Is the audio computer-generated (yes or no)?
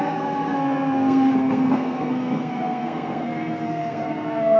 yes